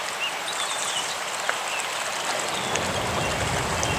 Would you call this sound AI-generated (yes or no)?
no